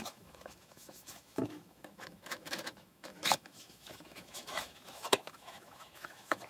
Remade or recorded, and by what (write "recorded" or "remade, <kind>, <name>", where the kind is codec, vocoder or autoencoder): remade, autoencoder, DAC-VAE